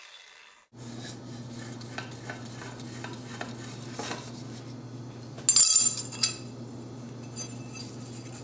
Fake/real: real